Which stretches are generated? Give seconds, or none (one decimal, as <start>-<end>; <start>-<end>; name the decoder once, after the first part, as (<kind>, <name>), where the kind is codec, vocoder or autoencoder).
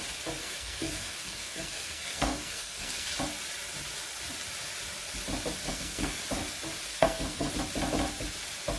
0.4-3.1 (codec, SNAC); 5.7-6.2; 6.9-7.5